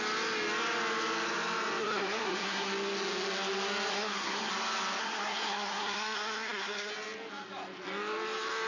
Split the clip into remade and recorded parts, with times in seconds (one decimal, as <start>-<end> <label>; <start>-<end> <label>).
0.0-1.8 recorded; 1.8-2.7 remade; 2.7-3.9 recorded; 3.9-4.5 remade; 4.5-5.0 recorded; 5.0-6.9 remade; 6.9-8.7 recorded